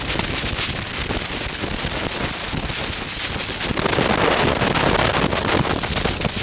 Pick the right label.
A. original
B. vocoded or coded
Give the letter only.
A